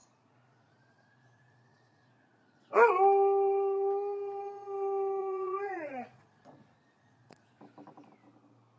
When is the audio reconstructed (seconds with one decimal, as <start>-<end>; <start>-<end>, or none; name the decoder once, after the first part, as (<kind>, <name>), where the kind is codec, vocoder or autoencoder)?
0.0-2.9 (vocoder, Vocos); 5.2-7.6